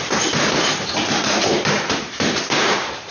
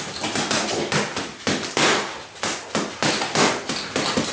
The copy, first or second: first